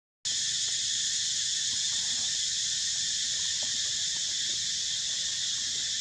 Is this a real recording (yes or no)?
yes